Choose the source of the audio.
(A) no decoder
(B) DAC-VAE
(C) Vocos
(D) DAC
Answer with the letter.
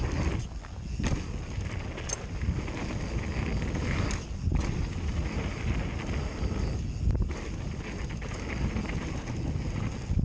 A